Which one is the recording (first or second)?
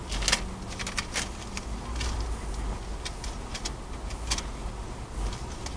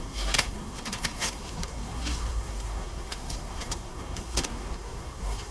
first